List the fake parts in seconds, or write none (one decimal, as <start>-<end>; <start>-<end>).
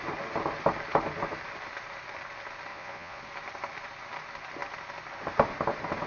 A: 2.7-3.2